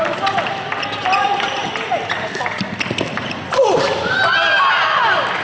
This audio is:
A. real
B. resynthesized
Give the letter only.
A